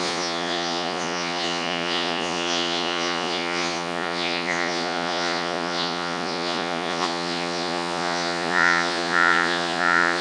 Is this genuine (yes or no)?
no